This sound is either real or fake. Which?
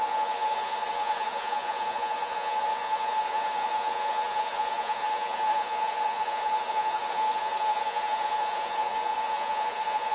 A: fake